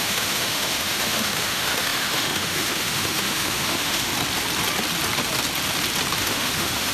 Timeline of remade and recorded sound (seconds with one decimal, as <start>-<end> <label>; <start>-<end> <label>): 0.0-4.1 remade; 4.1-6.2 recorded; 6.2-6.9 remade